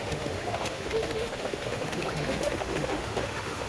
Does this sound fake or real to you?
fake